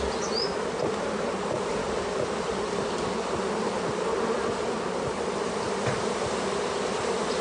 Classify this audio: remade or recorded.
recorded